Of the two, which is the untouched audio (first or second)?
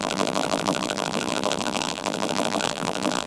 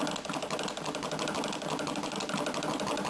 second